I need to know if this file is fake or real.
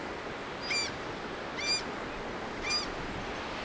real